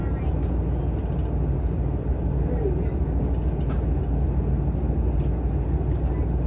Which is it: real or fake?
real